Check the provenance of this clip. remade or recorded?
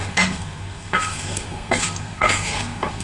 remade